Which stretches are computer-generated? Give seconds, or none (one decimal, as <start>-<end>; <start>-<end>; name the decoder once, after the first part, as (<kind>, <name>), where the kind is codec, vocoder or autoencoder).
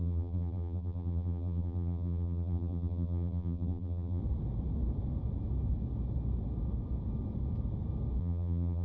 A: 0.0-4.2 (vocoder, BigVGAN v2); 8.2-8.8